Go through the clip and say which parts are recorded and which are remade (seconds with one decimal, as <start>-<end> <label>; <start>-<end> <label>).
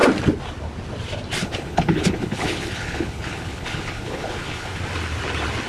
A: 0.0-1.4 recorded; 1.4-4.8 remade; 4.8-5.7 recorded